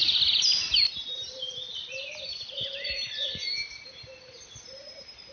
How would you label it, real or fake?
real